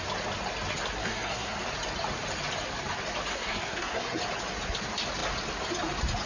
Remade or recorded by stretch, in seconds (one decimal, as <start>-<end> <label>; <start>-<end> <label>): 0.0-1.0 recorded; 1.0-1.6 remade; 1.6-3.3 recorded; 3.3-4.2 remade; 4.2-6.3 recorded